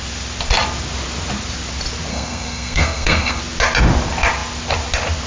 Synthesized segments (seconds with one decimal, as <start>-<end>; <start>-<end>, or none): 2.1-3.4